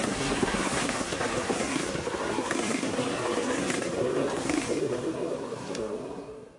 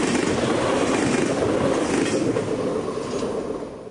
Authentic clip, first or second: second